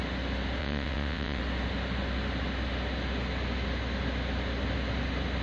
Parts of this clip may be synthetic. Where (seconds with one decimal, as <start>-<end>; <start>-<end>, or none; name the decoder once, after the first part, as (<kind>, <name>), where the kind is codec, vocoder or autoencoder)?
0.6-1.4 (vocoder, WaveNeXt)